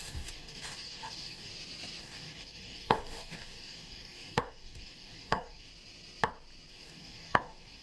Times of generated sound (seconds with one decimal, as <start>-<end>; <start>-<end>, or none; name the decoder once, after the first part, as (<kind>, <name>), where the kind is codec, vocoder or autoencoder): 0.0-1.5 (codec, DAC); 2.0-5.7; 6.7-7.8